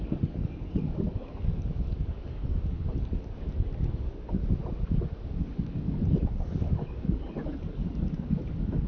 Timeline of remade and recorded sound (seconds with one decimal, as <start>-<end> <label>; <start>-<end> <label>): 0.0-4.4 remade; 4.4-5.4 recorded; 5.4-8.9 remade